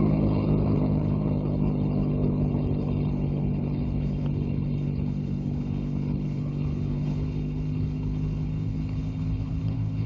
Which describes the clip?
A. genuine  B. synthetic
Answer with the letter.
B